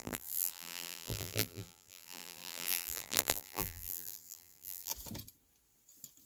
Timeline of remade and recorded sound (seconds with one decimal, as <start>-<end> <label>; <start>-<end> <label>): 0.0-4.9 remade; 4.9-6.3 recorded